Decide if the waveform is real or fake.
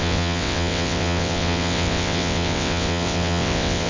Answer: fake